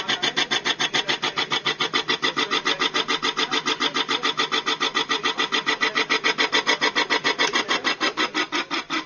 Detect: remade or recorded recorded